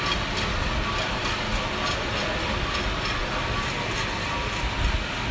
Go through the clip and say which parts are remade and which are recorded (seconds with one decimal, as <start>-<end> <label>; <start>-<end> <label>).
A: 0.0-5.3 recorded

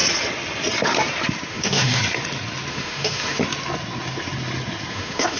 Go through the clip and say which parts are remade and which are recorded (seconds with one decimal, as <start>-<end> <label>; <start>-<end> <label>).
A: 0.0-1.5 recorded; 1.5-2.0 remade; 2.0-2.7 recorded; 2.7-3.4 remade; 3.4-4.9 recorded; 4.9-5.4 remade

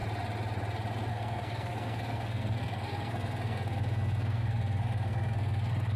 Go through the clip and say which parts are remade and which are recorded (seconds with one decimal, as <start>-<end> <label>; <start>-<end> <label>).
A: 0.0-1.1 recorded; 1.1-6.0 remade

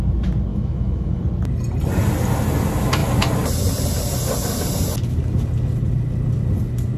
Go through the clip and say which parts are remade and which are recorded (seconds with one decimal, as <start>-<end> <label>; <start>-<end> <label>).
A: 0.0-0.5 recorded; 0.5-1.2 remade; 1.2-7.0 recorded